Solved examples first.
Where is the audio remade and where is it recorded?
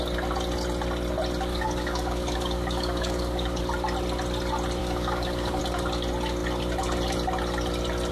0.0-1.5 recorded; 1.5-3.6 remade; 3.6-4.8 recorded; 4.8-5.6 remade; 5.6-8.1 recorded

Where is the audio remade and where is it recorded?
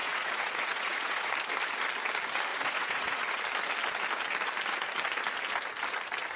0.0-1.3 remade; 1.3-2.5 recorded; 2.5-3.4 remade; 3.4-6.4 recorded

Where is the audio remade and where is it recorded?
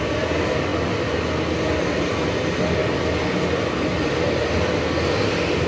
0.0-5.7 recorded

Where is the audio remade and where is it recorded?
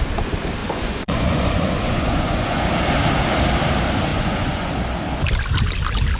0.0-0.6 recorded; 0.6-2.7 remade; 2.7-4.1 recorded; 4.1-4.7 remade; 4.7-6.2 recorded